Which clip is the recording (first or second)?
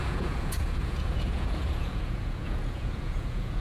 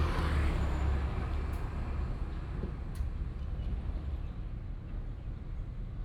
second